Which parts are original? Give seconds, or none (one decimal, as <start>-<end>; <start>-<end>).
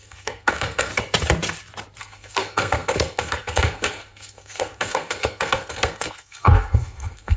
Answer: 0.9-2.0